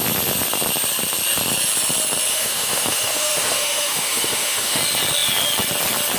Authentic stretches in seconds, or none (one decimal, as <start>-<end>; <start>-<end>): 0.0-2.3; 4.8-6.2